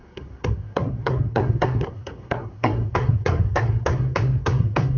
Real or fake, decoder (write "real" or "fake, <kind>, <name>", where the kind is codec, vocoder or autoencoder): fake, codec, SNAC